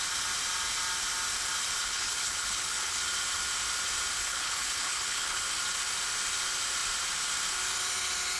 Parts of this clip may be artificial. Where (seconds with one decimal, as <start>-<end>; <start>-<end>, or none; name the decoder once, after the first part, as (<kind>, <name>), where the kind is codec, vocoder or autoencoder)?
1.8-3.0 (codec, HILCodec); 4.2-5.4